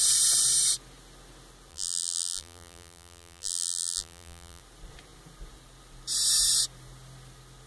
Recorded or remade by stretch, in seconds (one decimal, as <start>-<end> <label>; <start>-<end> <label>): 0.0-1.7 recorded; 1.7-4.6 remade; 4.6-7.7 recorded